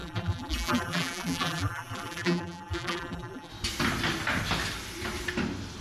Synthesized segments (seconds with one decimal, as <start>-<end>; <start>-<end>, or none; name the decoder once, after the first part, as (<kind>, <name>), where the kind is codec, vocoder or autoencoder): 0.0-3.5 (vocoder, BigVGAN v2)